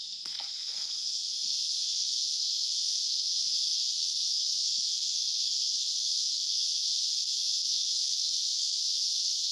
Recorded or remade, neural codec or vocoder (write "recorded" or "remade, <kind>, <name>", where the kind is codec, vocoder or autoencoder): remade, codec, SNAC